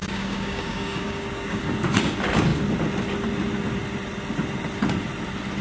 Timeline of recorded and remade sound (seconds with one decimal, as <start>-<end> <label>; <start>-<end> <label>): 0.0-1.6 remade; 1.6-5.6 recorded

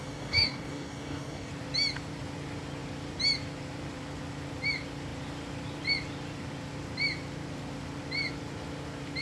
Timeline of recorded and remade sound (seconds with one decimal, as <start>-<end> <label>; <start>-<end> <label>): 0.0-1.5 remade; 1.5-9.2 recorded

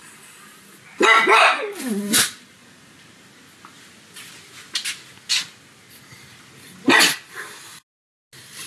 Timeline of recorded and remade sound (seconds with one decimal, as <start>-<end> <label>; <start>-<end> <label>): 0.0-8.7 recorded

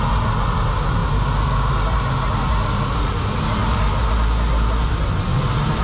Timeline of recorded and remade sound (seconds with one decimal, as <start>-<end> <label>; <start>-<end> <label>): 0.0-3.6 recorded; 3.6-4.1 remade; 4.1-5.8 recorded